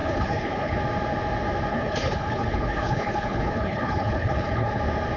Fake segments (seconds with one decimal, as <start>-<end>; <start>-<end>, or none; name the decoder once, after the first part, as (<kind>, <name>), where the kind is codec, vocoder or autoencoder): 0.0-0.8 (codec, HILCodec); 1.7-4.8